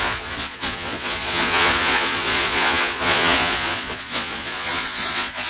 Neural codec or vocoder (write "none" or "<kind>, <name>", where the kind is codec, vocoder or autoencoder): vocoder, Vocos